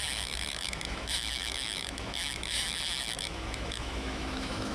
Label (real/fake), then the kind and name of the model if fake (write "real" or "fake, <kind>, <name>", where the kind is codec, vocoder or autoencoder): fake, autoencoder, DAC-VAE